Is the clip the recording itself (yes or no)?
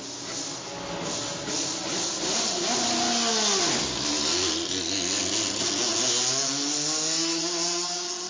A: yes